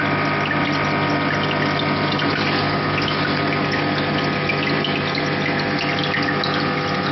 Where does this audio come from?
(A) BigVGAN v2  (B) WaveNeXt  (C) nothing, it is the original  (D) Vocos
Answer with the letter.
C